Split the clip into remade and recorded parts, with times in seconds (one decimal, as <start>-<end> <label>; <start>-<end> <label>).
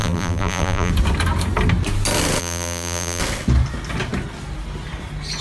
0.0-0.9 remade; 0.9-2.4 recorded; 2.4-3.2 remade; 3.2-5.4 recorded